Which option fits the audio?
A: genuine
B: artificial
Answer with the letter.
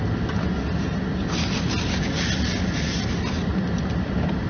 A